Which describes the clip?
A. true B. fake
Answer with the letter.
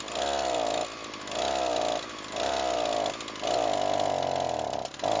A